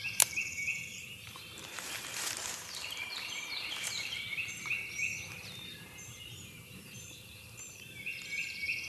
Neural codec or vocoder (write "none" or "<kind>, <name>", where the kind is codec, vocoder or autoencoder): vocoder, BigVGAN v2